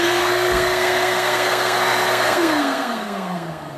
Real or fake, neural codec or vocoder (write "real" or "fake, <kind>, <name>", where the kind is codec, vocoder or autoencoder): fake, codec, SNAC